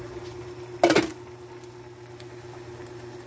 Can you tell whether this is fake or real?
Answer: real